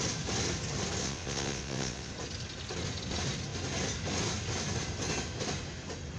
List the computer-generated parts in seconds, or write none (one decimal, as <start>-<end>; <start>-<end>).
1.0-2.1

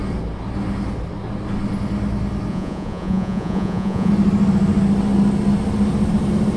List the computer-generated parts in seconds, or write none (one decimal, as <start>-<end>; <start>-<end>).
2.5-4.1

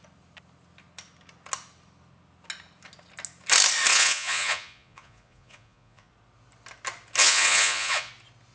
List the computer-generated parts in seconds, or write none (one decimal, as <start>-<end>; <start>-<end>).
3.9-6.1; 7.2-8.1

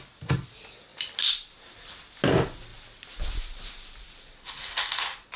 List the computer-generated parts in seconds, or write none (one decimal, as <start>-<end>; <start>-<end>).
none

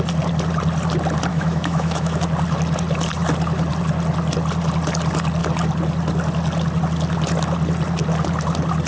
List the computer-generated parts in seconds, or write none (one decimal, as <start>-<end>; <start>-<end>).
1.3-2.2

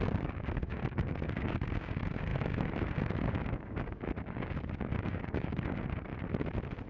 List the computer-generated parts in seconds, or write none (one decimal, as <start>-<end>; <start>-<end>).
0.0-6.1